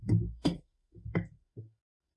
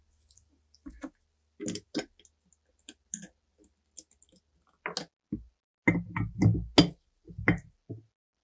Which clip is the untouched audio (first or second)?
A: second